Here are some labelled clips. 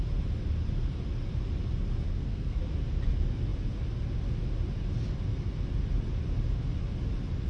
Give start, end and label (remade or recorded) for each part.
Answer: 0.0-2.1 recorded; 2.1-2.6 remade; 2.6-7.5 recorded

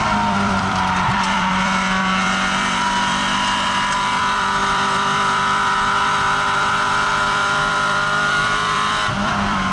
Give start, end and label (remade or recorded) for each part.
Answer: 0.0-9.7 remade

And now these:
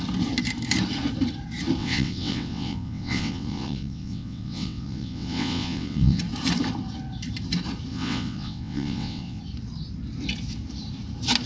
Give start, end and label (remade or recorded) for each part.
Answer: 0.0-1.8 recorded; 1.8-6.2 remade; 6.2-7.9 recorded; 7.9-9.4 remade; 9.4-11.5 recorded

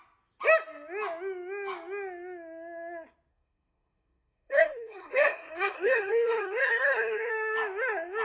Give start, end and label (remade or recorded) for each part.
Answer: 0.0-3.3 recorded; 3.3-7.3 remade; 7.3-8.2 recorded

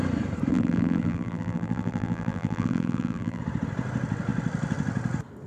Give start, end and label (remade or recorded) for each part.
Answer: 0.0-0.5 recorded; 0.5-3.4 remade; 3.4-5.5 recorded

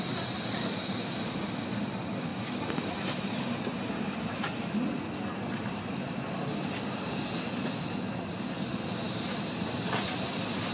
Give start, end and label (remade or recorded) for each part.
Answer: 0.0-10.7 recorded